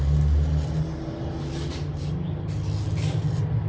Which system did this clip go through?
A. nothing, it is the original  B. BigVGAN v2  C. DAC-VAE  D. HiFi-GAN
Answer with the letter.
A